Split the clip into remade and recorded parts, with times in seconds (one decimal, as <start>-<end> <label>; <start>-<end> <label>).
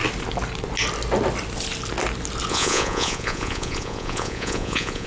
0.0-2.5 recorded; 2.5-5.1 remade